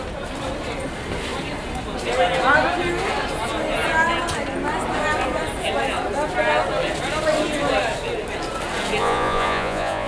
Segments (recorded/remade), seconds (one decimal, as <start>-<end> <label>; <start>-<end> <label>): 0.0-9.0 recorded; 9.0-10.1 remade